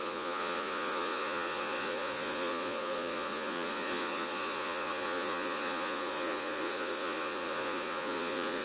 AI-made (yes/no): yes